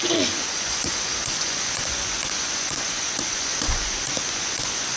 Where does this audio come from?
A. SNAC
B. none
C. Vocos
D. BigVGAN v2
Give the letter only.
C